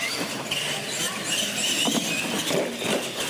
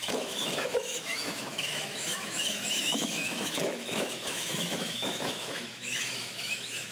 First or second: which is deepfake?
second